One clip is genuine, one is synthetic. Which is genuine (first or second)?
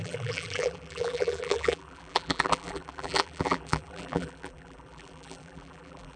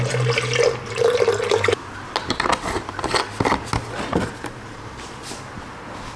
second